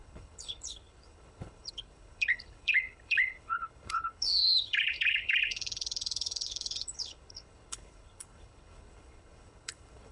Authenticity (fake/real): fake